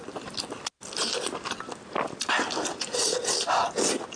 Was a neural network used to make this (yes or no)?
no